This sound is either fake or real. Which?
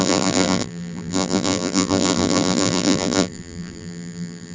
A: fake